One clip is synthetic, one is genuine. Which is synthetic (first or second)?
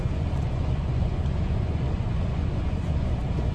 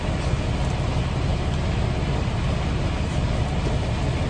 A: first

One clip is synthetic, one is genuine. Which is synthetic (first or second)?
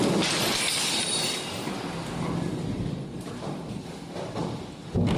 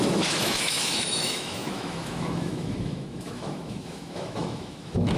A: second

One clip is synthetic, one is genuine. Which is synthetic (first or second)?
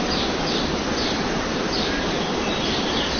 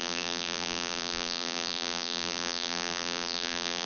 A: second